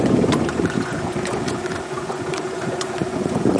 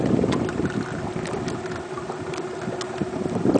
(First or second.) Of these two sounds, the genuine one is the second